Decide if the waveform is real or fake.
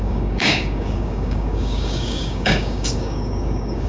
fake